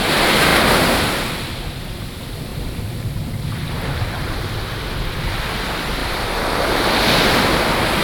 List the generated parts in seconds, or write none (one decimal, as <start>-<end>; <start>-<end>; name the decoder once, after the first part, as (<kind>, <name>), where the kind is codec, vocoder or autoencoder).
2.5-4.3 (vocoder, BigVGAN v2); 6.0-6.7